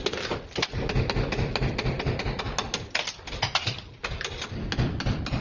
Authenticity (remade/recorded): recorded